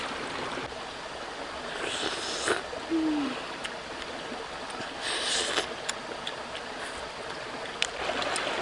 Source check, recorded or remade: recorded